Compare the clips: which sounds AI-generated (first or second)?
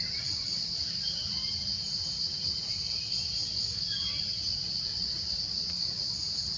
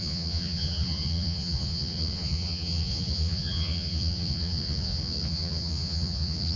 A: second